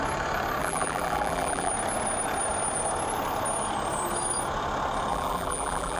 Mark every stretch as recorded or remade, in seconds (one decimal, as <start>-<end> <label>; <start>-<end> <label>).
0.0-0.6 recorded; 0.6-1.7 remade; 1.7-5.1 recorded; 5.1-6.0 remade